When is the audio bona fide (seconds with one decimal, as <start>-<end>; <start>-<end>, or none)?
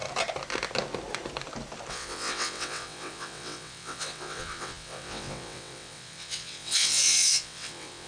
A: 0.0-1.9